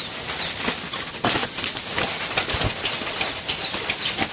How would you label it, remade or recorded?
recorded